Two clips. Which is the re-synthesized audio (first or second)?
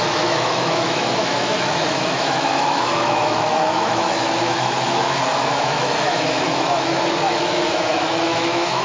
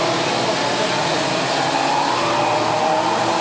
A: first